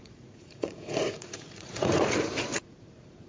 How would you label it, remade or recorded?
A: remade